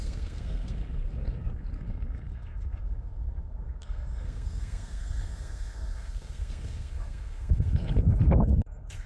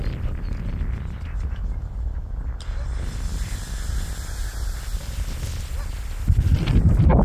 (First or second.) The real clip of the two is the second